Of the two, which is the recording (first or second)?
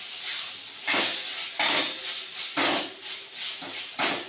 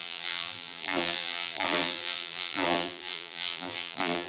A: first